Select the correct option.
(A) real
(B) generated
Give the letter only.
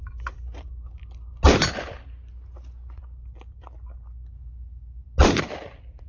A